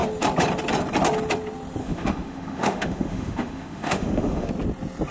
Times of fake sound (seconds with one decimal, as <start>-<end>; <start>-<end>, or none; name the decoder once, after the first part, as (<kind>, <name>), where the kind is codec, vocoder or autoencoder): 1.8-4.5 (autoencoder, DAC-VAE)